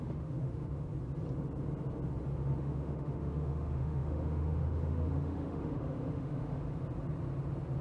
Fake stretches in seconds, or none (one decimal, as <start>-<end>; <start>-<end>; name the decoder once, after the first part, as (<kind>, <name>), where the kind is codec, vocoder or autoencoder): 0.0-0.9 (autoencoder, DAC-VAE); 2.6-6.6